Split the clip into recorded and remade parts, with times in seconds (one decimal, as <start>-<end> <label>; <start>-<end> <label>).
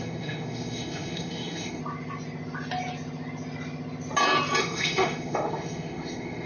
0.0-1.8 remade; 1.8-4.6 recorded; 4.6-6.5 remade